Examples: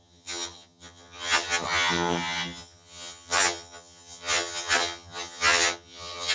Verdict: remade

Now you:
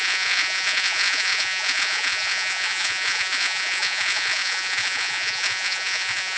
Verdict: remade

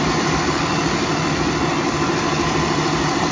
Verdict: recorded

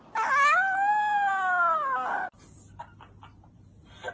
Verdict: recorded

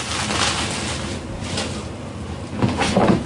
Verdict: recorded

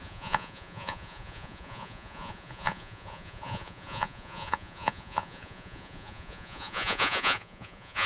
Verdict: remade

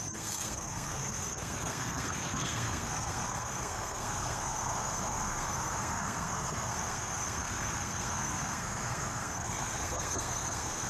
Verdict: remade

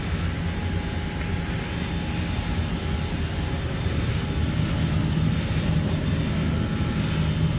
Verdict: recorded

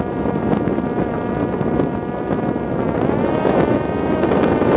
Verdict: recorded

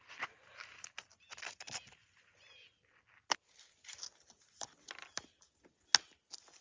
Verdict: recorded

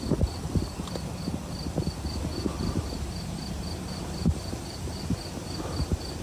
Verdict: recorded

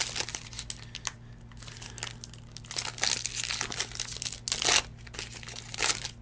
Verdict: recorded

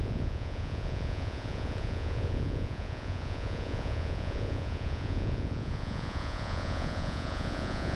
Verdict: remade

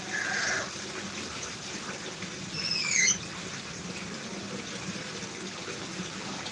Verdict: recorded